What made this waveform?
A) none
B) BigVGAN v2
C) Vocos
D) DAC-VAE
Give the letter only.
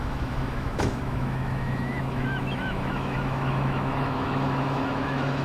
D